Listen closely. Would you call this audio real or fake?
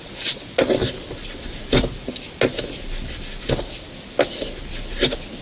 real